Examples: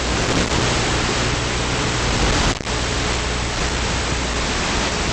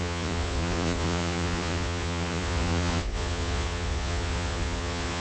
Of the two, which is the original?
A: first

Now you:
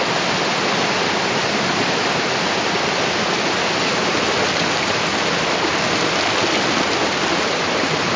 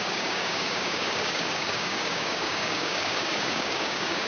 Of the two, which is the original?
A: first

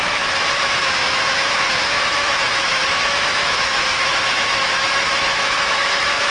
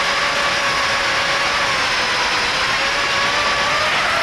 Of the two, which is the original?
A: second